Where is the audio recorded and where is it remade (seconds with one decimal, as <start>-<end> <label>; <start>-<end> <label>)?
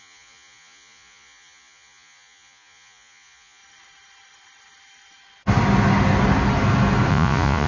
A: 0.0-3.6 remade; 3.6-7.1 recorded; 7.1-7.7 remade